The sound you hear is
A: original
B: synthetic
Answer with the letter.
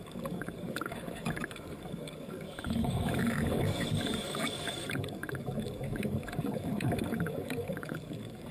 B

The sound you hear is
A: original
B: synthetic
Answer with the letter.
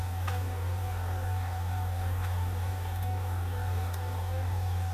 B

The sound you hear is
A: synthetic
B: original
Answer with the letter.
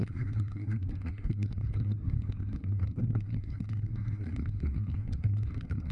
A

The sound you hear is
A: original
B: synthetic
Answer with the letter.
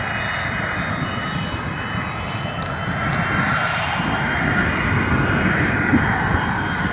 A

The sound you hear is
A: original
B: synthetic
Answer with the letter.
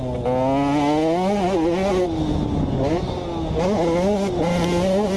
A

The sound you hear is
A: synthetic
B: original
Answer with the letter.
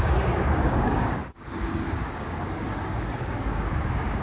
A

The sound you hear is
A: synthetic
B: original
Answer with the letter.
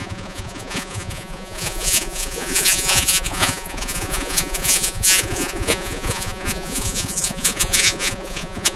A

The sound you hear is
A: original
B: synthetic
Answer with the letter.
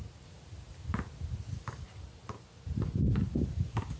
A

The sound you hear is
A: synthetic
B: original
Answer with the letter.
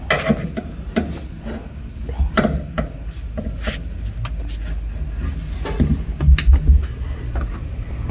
B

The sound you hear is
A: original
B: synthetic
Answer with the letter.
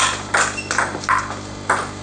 A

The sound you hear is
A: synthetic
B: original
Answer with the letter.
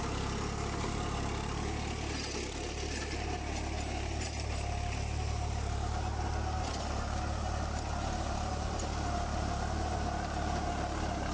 B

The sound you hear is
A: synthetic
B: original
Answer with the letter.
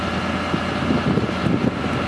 B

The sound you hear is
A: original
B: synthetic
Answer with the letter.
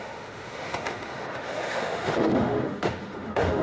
B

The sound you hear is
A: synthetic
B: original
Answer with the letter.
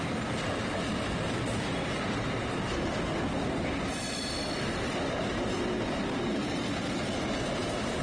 B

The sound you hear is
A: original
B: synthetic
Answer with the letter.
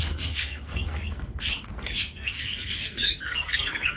B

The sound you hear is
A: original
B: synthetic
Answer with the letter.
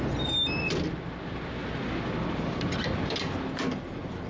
A